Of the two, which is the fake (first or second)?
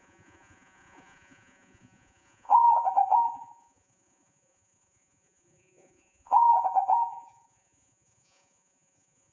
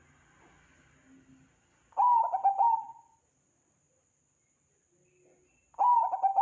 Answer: first